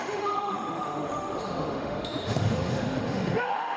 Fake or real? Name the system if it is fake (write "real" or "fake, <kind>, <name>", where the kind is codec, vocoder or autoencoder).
fake, autoencoder, DAC-VAE